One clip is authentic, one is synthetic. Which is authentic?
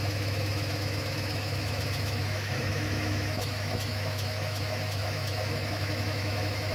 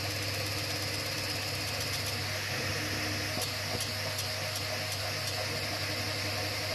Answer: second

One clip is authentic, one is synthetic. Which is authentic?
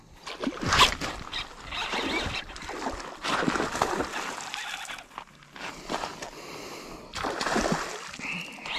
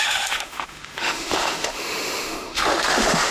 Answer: first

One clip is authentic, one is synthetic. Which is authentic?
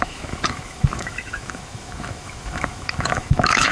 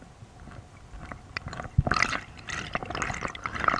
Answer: second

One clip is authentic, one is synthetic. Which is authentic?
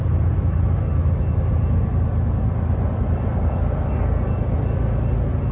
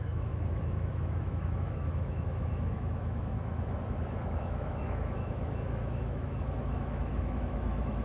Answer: first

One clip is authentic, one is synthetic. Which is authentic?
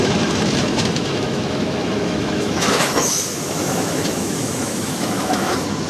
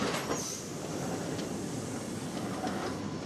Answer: second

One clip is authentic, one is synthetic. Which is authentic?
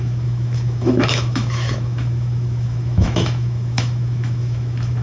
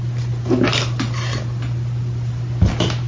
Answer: second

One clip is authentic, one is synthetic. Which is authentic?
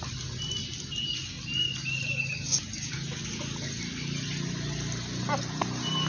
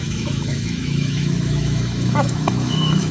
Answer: first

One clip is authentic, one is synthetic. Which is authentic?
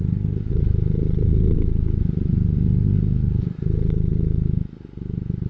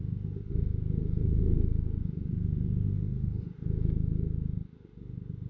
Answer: first